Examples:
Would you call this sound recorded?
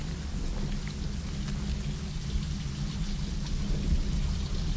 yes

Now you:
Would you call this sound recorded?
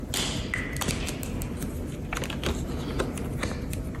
yes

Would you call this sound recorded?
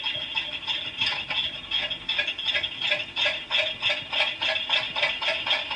yes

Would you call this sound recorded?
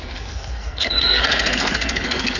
no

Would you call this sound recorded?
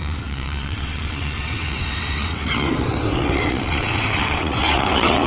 no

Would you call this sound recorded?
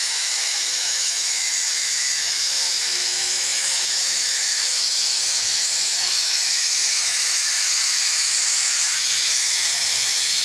no